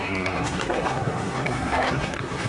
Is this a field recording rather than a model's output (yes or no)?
no